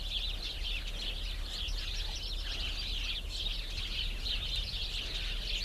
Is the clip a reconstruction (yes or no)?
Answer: no